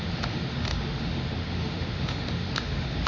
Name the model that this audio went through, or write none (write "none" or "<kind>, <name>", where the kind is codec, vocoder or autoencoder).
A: autoencoder, DAC-VAE